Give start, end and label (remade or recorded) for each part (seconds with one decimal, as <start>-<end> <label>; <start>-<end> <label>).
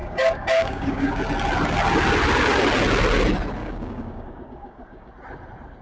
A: 0.0-1.2 remade; 1.2-3.6 recorded; 3.6-5.1 remade; 5.1-5.8 recorded